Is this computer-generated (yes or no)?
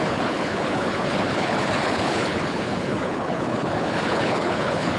yes